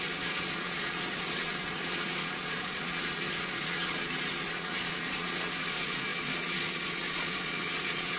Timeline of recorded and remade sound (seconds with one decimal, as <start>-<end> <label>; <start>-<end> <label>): 0.0-8.2 remade